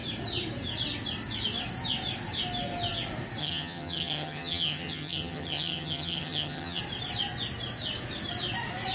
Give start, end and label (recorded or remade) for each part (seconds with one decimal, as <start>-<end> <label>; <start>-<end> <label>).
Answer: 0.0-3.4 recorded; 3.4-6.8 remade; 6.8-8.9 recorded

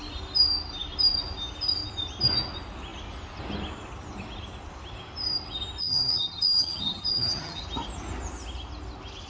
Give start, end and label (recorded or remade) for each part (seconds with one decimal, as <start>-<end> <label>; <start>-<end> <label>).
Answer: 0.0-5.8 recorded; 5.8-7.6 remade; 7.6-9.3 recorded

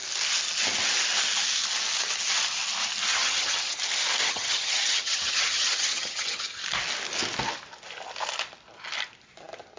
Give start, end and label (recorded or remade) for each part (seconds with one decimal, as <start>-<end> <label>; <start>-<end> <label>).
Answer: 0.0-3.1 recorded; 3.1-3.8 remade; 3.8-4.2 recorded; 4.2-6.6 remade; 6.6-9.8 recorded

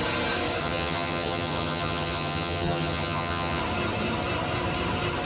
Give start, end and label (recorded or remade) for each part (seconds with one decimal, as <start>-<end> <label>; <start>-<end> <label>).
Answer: 0.0-0.6 recorded; 0.6-3.6 remade; 3.6-5.3 recorded

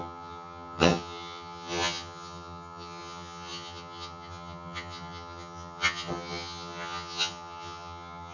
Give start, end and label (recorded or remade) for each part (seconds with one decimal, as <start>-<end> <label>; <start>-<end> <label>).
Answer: 0.0-8.3 remade

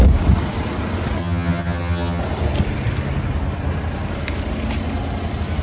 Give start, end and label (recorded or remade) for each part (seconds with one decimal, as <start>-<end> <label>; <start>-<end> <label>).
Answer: 0.0-1.2 recorded; 1.2-2.2 remade; 2.2-5.6 recorded

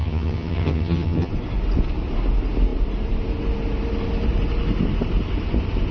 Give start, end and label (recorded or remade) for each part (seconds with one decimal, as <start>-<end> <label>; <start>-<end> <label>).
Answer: 0.0-1.3 remade; 1.3-5.9 recorded

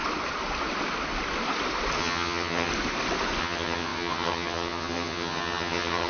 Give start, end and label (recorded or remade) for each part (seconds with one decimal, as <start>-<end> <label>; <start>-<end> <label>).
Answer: 0.0-2.0 recorded; 2.0-2.7 remade; 2.7-3.4 recorded; 3.4-6.1 remade